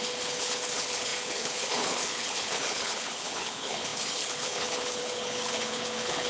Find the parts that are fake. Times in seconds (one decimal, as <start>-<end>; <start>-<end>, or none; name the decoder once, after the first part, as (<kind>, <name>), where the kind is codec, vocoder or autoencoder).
0.0-6.3 (codec, HILCodec)